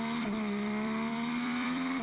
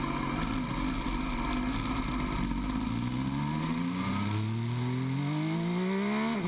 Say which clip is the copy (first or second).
first